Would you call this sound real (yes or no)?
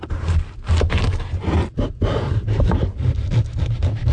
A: yes